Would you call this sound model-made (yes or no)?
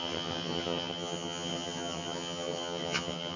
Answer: yes